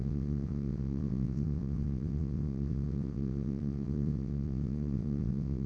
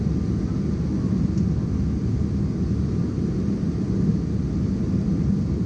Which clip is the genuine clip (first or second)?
second